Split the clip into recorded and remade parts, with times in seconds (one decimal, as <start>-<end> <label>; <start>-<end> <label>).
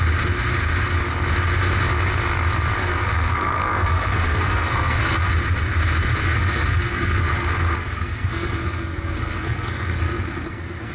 0.0-2.8 recorded; 2.8-5.3 remade; 5.3-6.2 recorded; 6.2-10.9 remade